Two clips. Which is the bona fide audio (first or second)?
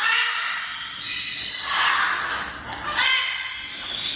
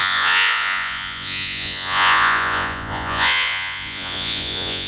first